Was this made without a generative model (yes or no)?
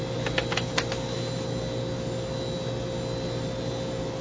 yes